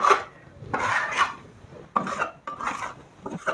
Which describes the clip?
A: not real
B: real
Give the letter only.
B